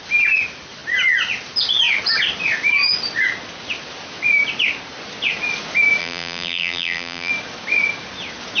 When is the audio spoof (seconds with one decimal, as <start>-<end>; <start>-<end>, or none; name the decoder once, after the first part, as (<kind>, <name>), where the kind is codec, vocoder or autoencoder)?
6.0-7.3 (vocoder, BigVGAN v2)